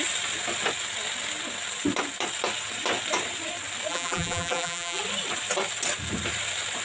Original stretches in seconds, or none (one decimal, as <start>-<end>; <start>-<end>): 0.0-3.9; 5.0-6.8